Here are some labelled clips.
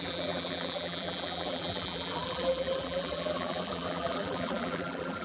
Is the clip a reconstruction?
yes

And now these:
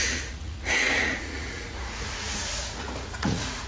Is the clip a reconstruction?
yes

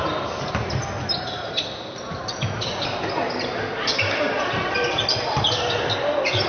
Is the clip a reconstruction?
no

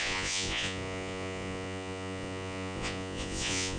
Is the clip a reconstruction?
yes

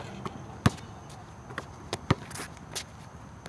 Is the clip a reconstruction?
no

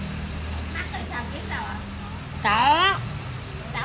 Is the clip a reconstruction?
no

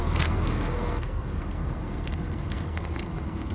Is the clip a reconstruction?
yes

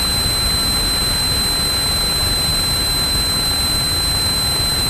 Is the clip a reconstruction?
no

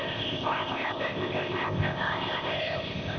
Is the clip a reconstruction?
yes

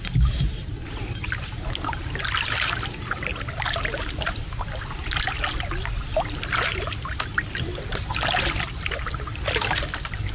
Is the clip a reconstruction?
no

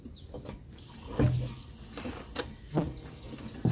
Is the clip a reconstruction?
no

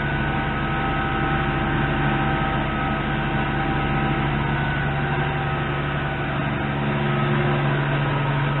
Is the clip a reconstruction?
no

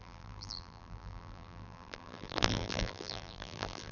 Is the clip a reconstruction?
yes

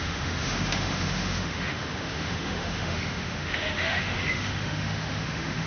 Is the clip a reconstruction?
yes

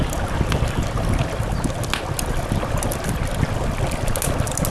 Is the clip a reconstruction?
no